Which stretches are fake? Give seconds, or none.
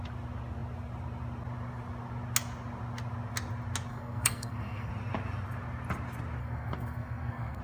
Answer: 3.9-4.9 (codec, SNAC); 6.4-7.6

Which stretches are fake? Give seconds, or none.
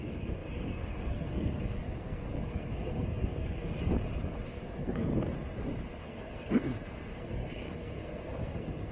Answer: 0.0-3.9 (codec, SNAC); 4.5-5.1; 6.0-8.9